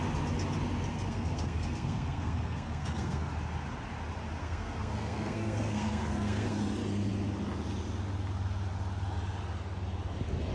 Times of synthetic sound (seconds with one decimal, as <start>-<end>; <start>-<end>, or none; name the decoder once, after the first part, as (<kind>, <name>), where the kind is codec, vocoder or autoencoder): 0.9-3.3 (codec, SNAC); 4.4-6.6